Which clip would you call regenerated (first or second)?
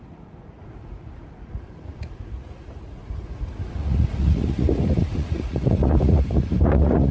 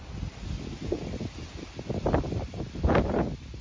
first